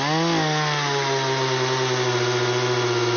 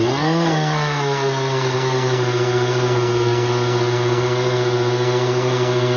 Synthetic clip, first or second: second